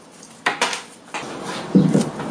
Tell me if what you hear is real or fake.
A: real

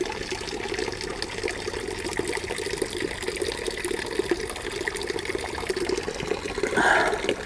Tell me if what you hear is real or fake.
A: real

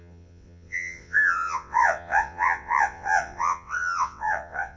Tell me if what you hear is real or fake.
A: fake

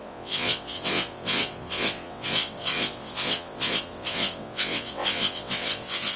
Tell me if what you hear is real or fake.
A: fake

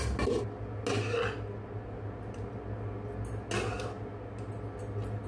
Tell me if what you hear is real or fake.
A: real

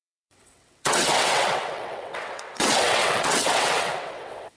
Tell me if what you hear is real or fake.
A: fake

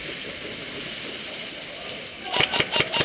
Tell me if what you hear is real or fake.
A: real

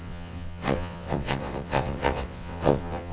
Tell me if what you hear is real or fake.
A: fake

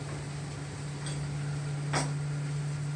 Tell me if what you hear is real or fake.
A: real